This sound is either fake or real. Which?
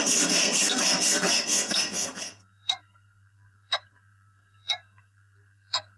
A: fake